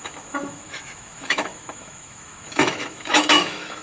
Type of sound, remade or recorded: remade